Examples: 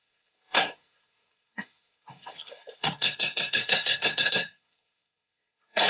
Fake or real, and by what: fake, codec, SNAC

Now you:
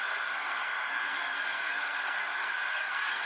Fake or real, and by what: fake, codec, SNAC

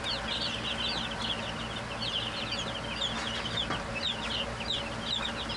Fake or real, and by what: real